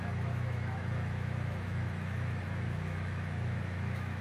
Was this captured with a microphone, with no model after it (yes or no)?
no